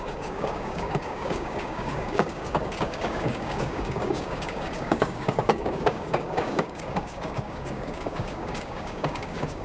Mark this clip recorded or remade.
remade